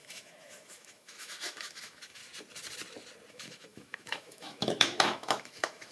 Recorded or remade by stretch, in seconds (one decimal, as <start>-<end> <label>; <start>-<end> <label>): 0.0-2.2 remade; 2.2-3.3 recorded; 3.3-5.9 remade